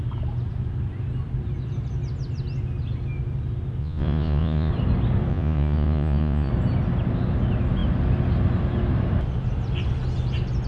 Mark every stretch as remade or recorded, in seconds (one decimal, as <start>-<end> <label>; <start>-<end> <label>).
0.0-3.8 recorded; 3.8-4.7 remade; 4.7-5.3 recorded; 5.3-6.5 remade; 6.5-10.7 recorded